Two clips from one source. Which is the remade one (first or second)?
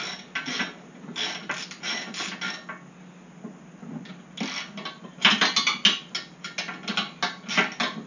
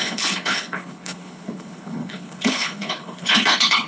second